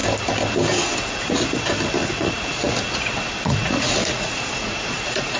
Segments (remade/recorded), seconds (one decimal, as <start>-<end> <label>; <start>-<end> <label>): 0.0-1.0 recorded; 1.0-1.6 remade; 1.6-2.0 recorded; 2.0-5.4 remade